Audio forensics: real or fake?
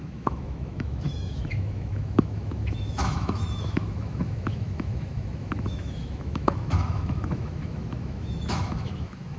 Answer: fake